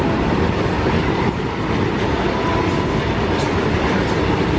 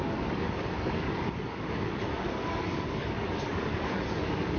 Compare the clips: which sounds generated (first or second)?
second